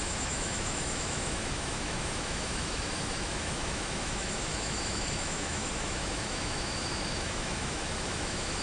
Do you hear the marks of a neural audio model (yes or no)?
yes